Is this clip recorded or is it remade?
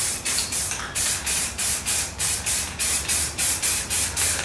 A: remade